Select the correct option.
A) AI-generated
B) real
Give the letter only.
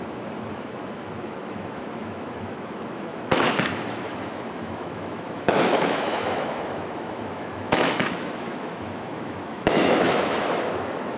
A